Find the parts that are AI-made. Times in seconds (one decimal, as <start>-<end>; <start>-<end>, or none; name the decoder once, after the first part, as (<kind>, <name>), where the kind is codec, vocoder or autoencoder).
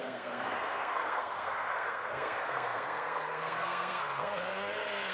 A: 0.0-5.1 (codec, SNAC)